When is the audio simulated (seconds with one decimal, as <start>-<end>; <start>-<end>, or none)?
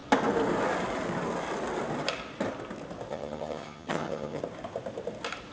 3.1-4.4